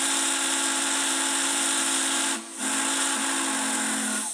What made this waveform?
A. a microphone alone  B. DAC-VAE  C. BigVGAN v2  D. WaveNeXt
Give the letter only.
A